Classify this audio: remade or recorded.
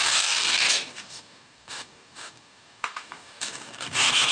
remade